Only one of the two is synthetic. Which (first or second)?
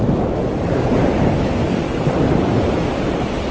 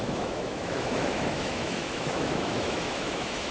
second